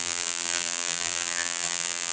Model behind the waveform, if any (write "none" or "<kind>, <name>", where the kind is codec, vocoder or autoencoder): vocoder, BigVGAN v2